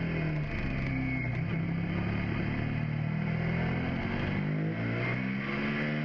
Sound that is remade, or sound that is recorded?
recorded